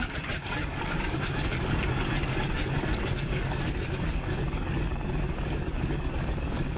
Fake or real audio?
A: fake